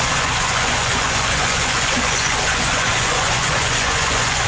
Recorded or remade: remade